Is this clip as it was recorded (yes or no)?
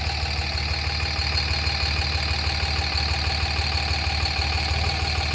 yes